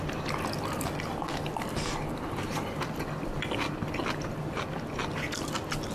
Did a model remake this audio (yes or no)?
no